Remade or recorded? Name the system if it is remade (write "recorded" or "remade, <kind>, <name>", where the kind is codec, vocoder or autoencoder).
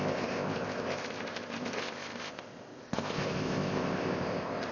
remade, codec, ZipCodec